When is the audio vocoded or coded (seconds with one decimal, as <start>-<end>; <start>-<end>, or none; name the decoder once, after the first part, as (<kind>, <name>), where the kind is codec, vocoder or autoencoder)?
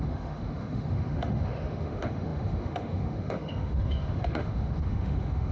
0.0-5.5 (autoencoder, DAC-VAE)